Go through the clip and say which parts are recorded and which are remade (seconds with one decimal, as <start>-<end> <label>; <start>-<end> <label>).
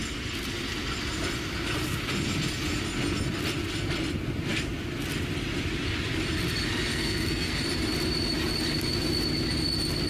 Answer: 0.0-6.9 recorded; 6.9-7.6 remade; 7.6-10.1 recorded